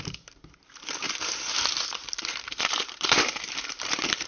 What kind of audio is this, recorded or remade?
remade